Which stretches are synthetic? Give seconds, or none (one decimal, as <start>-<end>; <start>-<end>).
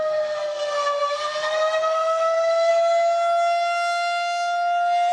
0.0-2.7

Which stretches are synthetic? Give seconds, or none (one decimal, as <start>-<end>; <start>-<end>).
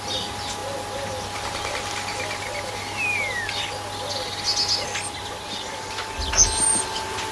none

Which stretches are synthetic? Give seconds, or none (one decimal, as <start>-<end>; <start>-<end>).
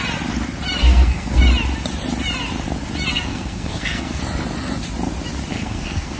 0.8-1.4; 3.1-4.2; 5.5-6.2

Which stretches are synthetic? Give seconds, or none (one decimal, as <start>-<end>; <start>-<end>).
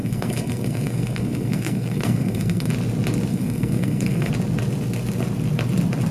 0.0-2.7; 3.3-4.3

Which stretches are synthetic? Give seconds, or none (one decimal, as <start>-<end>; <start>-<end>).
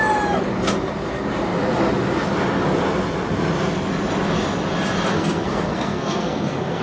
5.1-6.8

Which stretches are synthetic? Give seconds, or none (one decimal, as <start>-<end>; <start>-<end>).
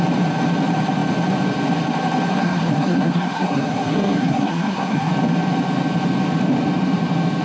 2.3-5.1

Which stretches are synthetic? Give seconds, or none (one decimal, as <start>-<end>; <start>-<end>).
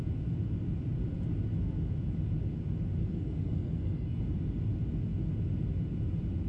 3.0-4.2